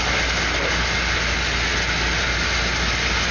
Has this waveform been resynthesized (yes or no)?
no